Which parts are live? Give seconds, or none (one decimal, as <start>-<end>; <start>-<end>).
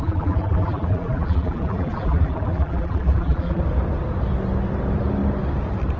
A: 3.6-6.0